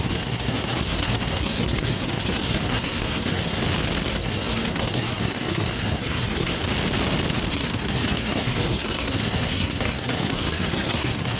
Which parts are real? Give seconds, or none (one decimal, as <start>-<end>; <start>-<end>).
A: 3.6-4.1; 6.6-7.5